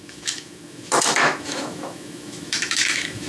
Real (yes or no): no